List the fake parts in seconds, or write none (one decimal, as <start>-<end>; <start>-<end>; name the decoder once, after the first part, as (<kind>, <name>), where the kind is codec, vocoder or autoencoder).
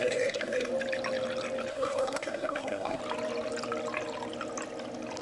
0.0-0.7 (codec, SNAC); 1.7-3.0